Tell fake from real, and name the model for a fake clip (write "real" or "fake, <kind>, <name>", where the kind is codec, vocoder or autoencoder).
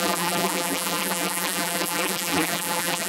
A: fake, vocoder, BigVGAN v2